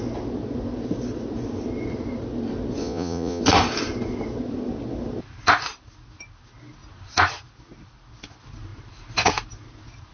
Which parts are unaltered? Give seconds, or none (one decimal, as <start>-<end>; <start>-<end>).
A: 0.0-2.8; 3.4-10.1